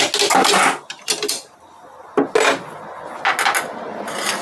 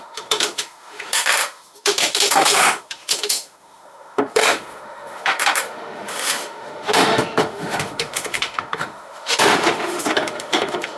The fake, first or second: second